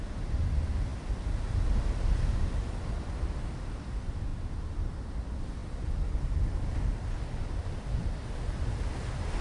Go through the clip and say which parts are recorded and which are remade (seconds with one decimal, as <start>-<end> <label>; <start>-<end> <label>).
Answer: 0.0-9.4 recorded